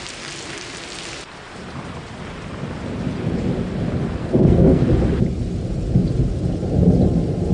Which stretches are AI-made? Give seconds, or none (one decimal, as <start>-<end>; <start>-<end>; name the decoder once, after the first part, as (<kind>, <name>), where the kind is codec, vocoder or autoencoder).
4.2-4.8 (codec, SNAC)